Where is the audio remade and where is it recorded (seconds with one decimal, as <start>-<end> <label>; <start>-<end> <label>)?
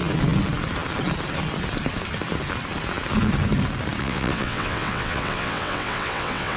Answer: 0.0-4.0 recorded; 4.0-6.6 remade